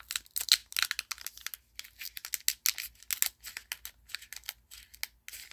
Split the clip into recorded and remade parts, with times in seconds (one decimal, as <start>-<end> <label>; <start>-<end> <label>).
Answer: 0.0-5.5 recorded